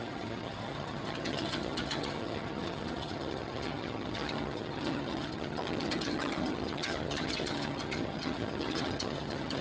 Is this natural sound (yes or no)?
no